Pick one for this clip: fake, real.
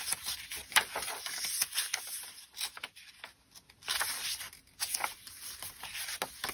real